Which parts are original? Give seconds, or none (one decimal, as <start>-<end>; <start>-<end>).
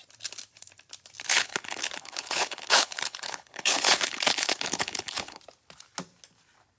0.0-1.3; 5.4-6.8